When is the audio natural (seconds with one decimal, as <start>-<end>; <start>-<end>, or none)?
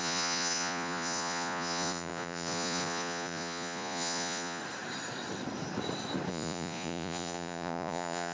4.6-6.3